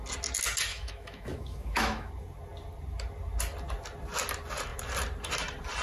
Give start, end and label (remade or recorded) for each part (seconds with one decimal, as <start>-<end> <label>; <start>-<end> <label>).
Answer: 0.0-0.7 recorded; 0.7-2.1 remade; 2.1-5.8 recorded